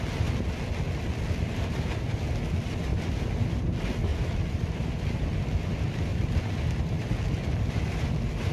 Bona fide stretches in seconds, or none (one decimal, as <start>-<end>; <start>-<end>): 0.0-2.9; 3.6-4.1; 6.4-8.5